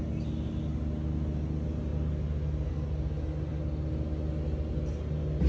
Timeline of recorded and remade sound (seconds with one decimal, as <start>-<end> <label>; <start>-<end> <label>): 0.0-5.5 recorded